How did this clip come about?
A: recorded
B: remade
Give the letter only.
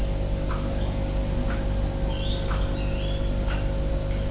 A